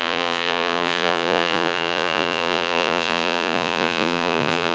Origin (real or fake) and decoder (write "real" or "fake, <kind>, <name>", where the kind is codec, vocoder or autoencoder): fake, vocoder, Vocos